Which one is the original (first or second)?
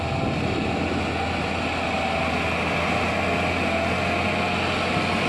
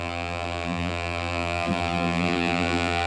first